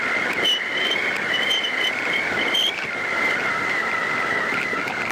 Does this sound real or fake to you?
real